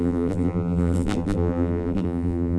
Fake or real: fake